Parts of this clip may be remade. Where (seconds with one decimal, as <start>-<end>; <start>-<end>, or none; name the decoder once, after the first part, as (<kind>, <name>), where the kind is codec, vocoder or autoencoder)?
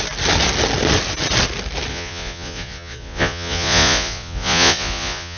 1.9-5.4 (vocoder, Vocos)